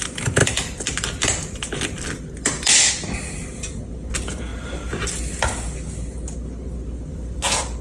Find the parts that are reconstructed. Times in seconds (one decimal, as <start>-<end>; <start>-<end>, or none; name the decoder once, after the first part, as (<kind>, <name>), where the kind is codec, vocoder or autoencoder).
0.4-2.9 (vocoder, BigVGAN v2); 4.5-5.2; 7.1-7.8